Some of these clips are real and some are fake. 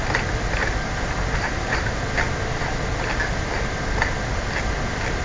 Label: real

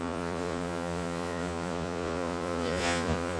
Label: fake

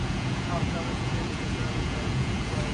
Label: fake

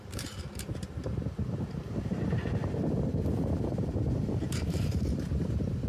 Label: fake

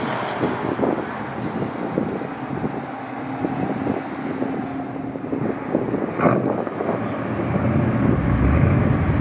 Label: real